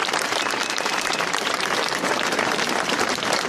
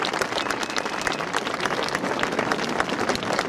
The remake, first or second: first